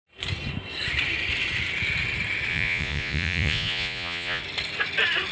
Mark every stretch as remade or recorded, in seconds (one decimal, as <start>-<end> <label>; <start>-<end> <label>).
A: 0.0-2.5 recorded; 2.5-4.4 remade; 4.4-5.3 recorded